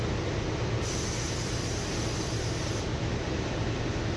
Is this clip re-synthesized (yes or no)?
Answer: no